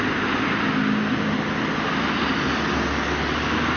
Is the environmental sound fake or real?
real